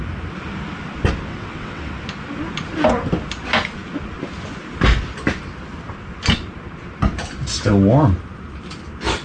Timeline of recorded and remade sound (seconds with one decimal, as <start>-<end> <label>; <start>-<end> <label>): 0.0-1.3 recorded; 1.3-1.9 remade; 1.9-9.2 recorded